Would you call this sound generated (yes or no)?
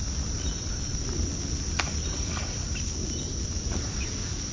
yes